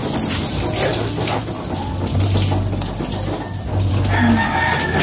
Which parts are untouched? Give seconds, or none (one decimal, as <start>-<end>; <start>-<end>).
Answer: 0.0-5.0

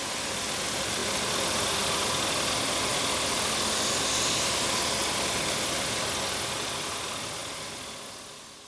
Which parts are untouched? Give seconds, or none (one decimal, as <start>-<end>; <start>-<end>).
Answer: 0.0-8.7

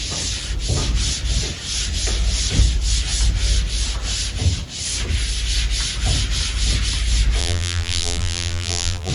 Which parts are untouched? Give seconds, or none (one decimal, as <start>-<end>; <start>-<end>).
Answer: 0.0-7.4

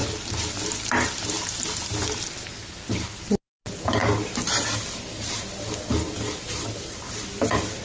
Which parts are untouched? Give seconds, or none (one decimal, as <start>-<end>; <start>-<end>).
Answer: 0.0-7.8

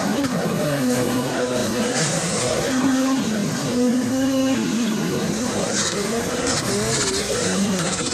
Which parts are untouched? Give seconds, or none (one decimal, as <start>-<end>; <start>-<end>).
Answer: 6.7-7.2

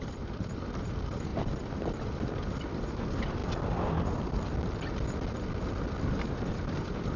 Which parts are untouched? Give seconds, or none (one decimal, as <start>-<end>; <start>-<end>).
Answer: 1.3-2.6; 3.4-6.1

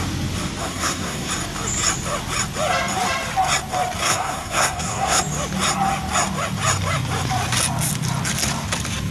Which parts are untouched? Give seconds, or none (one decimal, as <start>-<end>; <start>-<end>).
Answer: 0.0-0.6; 1.3-4.0; 5.2-9.1